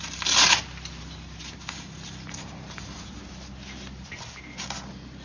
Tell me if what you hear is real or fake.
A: real